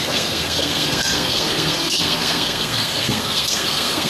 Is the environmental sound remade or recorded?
remade